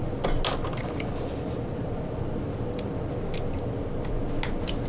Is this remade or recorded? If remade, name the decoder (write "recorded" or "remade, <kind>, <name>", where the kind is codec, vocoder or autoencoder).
recorded